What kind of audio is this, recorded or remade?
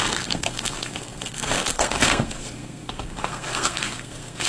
remade